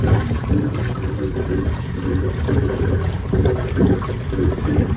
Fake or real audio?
fake